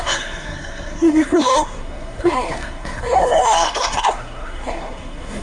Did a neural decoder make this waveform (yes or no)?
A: yes